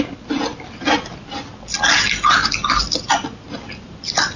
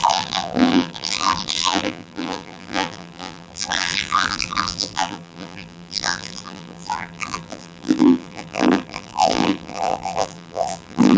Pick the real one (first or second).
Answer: first